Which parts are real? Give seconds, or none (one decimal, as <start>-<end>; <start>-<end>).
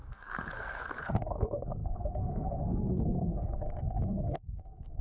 none